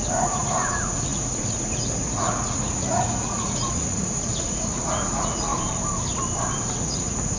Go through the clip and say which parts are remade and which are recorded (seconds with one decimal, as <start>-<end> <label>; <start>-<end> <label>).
0.0-5.5 remade; 5.5-6.7 recorded; 6.7-7.4 remade